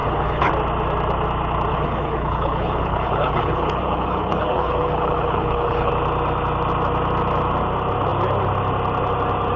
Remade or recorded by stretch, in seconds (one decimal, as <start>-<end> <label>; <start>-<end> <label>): 0.0-0.5 remade; 0.5-1.7 recorded; 1.7-5.9 remade; 5.9-9.6 recorded